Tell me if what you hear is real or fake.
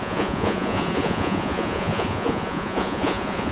fake